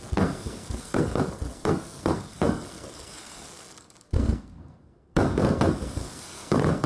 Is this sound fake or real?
fake